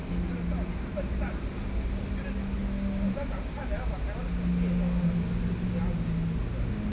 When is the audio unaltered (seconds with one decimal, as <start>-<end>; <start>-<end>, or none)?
0.0-6.9